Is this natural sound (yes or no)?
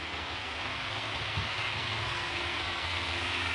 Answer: no